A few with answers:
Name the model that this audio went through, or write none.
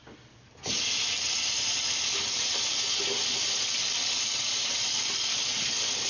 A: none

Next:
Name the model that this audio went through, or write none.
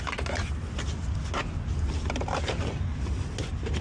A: none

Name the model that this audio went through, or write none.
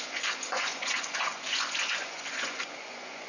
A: vocoder, Vocos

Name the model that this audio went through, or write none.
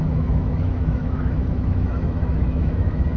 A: autoencoder, DAC-VAE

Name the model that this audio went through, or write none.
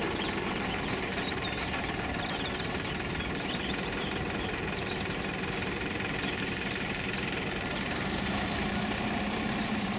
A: vocoder, BigVGAN v2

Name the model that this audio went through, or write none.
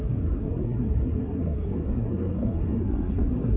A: codec, SNAC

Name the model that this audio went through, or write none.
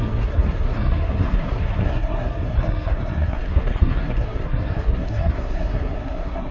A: codec, SNAC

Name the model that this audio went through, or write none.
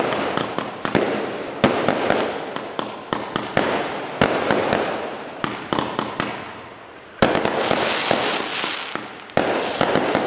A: none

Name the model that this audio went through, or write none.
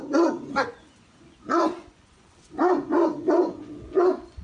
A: vocoder, Vocos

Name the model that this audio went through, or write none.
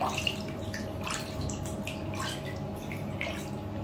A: none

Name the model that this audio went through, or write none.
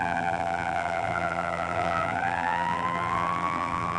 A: vocoder, BigVGAN v2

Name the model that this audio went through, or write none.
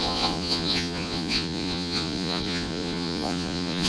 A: vocoder, Vocos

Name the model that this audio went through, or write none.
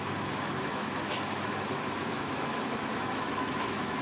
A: autoencoder, DAC-VAE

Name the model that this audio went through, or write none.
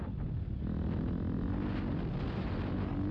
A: none